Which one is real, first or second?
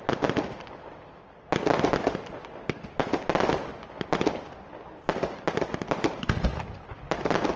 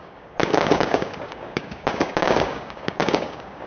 first